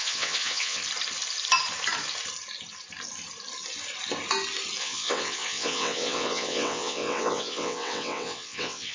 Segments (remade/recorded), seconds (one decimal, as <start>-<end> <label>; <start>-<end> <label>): 0.0-0.8 remade; 0.8-4.8 recorded; 4.8-8.9 remade